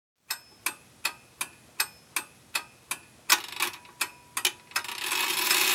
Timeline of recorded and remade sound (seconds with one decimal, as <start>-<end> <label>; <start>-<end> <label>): 0.0-5.7 recorded